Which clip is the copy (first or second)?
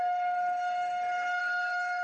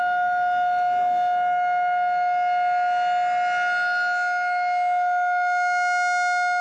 first